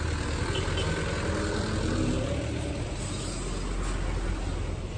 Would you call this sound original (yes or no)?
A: yes